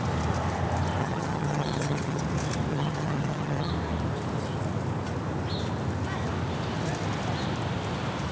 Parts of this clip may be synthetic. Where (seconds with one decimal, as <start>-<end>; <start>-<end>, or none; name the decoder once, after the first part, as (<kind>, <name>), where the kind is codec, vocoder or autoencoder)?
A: 1.0-2.2 (vocoder, HiFi-GAN); 2.7-3.7